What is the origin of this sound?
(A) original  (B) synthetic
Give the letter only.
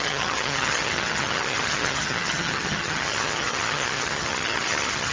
B